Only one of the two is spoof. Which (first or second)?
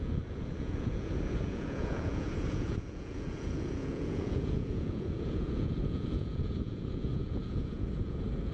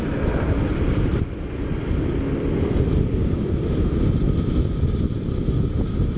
first